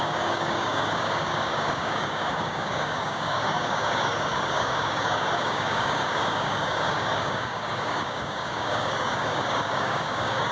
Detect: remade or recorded remade